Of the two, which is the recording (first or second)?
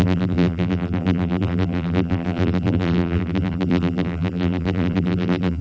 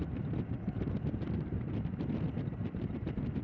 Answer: second